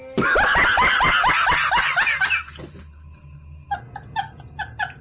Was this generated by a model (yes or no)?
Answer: no